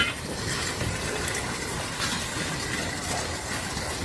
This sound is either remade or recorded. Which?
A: recorded